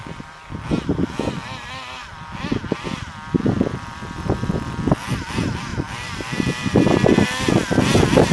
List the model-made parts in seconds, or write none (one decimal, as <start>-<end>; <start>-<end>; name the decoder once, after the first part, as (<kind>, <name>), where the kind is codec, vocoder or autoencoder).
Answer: none